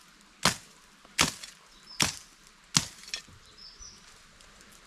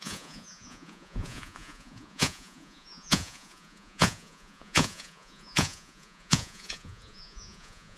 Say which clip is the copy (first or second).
second